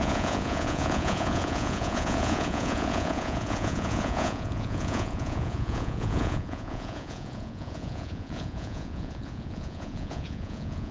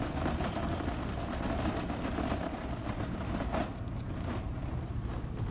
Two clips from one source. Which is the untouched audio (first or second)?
second